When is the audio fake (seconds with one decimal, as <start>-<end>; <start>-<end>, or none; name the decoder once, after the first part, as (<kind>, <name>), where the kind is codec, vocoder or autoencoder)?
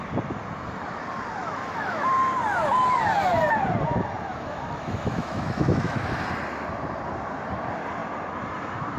1.4-2.1 (autoencoder, DAC-VAE); 4.3-6.2